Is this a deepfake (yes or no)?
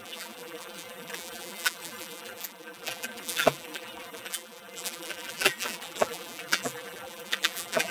yes